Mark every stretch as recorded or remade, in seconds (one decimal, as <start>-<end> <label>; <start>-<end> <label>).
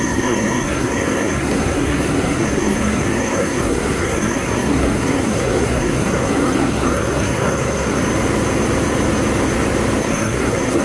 0.0-8.0 remade; 8.0-10.0 recorded; 10.0-10.8 remade